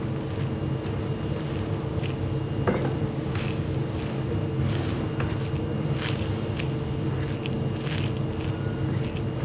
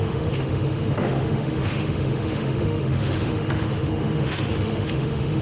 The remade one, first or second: second